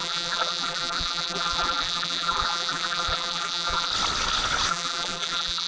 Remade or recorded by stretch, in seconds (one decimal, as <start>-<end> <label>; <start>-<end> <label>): 0.0-3.9 remade; 3.9-4.7 recorded; 4.7-5.7 remade